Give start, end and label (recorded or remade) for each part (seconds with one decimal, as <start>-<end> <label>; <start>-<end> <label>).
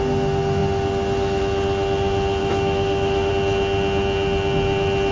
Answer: 0.0-2.4 recorded; 2.4-3.3 remade; 3.3-5.1 recorded